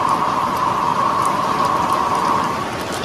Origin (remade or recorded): remade